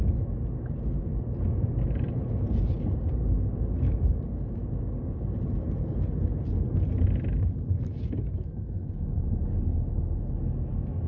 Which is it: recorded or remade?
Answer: recorded